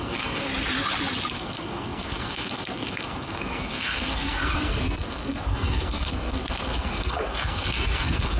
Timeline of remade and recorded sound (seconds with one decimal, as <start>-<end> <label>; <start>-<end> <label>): 0.0-0.5 remade; 0.5-1.3 recorded; 1.3-8.4 remade